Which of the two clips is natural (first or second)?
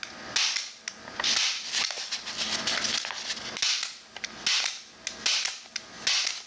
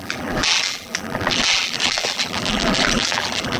first